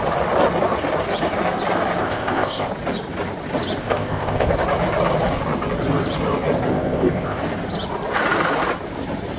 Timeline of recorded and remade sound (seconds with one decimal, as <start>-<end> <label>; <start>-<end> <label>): 0.0-2.0 recorded; 2.0-2.7 remade; 2.7-3.8 recorded; 3.8-4.5 remade; 4.5-6.7 recorded; 6.7-7.4 remade; 7.4-9.4 recorded